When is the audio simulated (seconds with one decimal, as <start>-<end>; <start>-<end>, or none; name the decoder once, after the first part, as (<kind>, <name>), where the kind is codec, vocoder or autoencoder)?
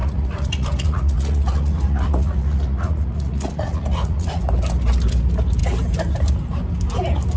0.0-4.4 (vocoder, Vocos)